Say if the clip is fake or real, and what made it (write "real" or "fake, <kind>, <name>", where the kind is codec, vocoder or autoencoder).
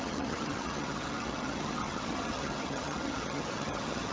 fake, vocoder, HiFi-GAN